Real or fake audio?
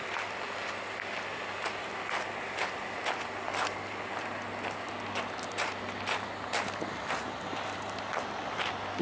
real